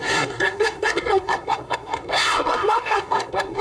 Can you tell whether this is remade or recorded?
remade